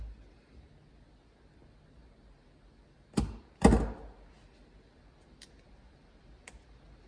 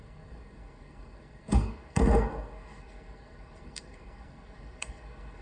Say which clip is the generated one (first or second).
second